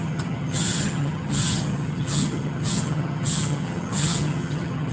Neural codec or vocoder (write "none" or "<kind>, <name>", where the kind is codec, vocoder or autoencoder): vocoder, HiFi-GAN